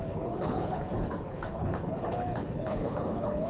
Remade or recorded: remade